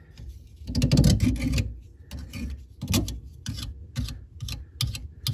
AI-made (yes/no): no